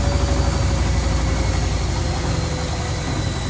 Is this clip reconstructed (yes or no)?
no